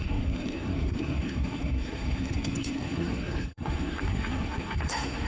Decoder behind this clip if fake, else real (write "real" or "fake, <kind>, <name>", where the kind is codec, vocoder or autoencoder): fake, codec, SNAC